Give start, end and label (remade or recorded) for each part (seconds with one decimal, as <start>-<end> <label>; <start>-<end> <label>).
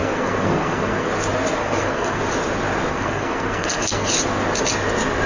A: 0.0-1.1 remade; 1.1-1.6 recorded; 1.6-2.2 remade; 2.2-2.9 recorded; 2.9-4.1 remade; 4.1-5.3 recorded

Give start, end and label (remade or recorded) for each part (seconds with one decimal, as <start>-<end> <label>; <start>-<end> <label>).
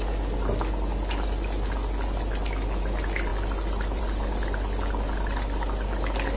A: 0.0-6.4 recorded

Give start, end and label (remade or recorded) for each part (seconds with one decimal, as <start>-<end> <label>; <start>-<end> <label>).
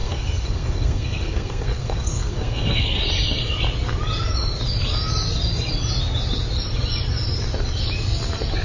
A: 0.0-3.0 remade; 3.0-8.6 recorded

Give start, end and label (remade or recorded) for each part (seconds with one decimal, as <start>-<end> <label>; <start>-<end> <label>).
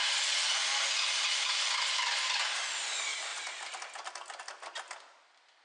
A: 0.0-5.6 recorded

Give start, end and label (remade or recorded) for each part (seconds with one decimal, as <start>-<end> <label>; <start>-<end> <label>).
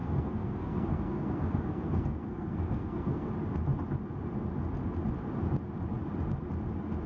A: 0.0-3.3 remade; 3.3-7.1 recorded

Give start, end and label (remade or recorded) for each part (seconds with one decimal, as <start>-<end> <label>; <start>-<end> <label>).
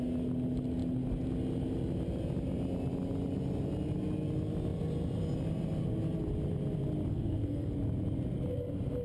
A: 0.0-7.1 recorded; 7.1-7.7 remade; 7.7-9.0 recorded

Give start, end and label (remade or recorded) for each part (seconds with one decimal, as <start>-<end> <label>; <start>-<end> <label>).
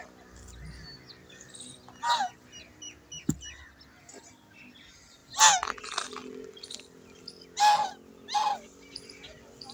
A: 0.0-9.7 recorded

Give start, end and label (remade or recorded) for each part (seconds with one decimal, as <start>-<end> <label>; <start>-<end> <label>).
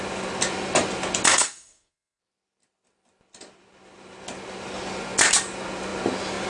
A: 0.0-1.3 recorded; 1.3-2.2 remade; 2.2-6.5 recorded